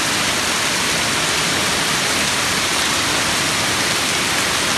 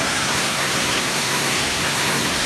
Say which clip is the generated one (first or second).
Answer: second